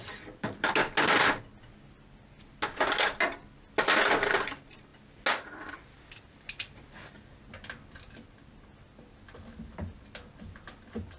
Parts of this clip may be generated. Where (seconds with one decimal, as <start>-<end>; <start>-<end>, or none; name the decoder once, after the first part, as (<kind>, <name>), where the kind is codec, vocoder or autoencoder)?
none